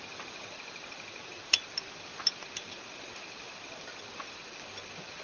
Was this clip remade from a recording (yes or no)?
no